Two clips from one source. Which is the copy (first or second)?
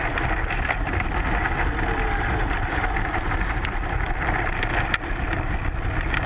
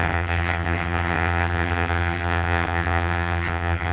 second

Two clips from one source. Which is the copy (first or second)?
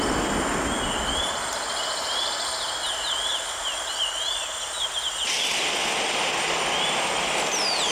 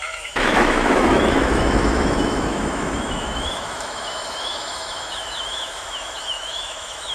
second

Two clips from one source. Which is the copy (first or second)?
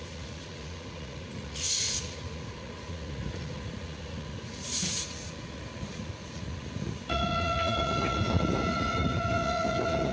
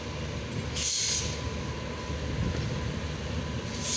first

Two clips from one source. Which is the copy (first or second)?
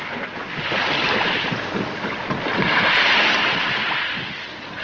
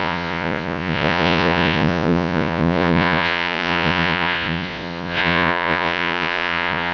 second